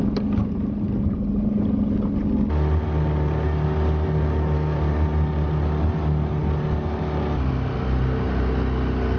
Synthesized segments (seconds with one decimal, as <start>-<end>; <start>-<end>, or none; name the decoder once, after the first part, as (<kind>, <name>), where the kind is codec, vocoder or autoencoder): none